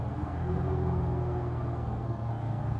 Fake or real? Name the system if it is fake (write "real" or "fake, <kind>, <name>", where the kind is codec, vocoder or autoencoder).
fake, codec, SNAC